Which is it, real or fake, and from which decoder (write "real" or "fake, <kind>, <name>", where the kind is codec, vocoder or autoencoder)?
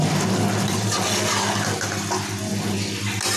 real